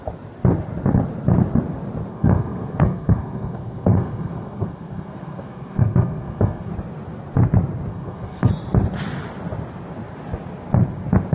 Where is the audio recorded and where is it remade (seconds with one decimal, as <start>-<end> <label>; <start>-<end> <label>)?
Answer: 0.0-2.1 recorded; 2.1-6.7 remade; 6.7-7.9 recorded; 7.9-8.5 remade; 8.5-11.3 recorded